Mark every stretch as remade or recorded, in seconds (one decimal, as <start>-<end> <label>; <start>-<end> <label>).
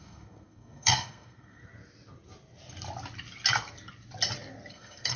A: 0.0-1.6 remade; 1.6-4.7 recorded; 4.7-5.2 remade